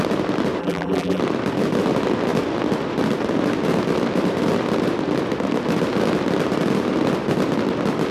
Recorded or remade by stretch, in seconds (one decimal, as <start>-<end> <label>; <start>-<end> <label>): 0.0-0.6 recorded; 0.6-1.2 remade; 1.2-8.1 recorded